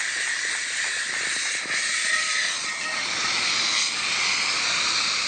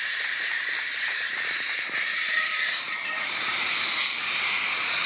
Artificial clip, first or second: second